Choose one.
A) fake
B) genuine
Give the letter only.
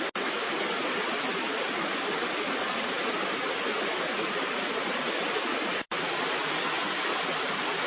B